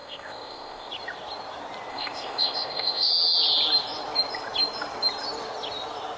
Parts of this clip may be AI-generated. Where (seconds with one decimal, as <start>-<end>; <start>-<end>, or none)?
0.0-0.9; 1.9-3.1